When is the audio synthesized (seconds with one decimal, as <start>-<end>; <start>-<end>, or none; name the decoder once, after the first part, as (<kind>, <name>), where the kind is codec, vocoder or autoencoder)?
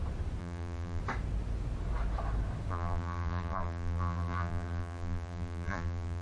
0.4-1.0 (vocoder, BigVGAN v2); 2.7-6.2